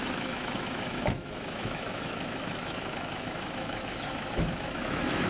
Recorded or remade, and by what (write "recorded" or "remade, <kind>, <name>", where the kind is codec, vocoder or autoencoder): remade, autoencoder, DAC-VAE